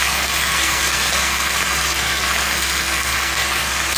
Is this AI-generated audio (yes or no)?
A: yes